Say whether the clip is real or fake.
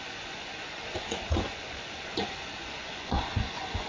fake